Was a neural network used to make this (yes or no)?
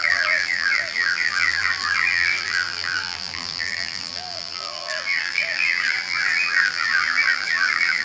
yes